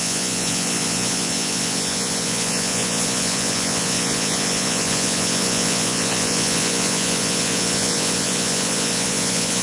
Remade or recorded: remade